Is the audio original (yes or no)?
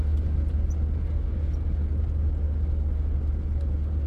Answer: yes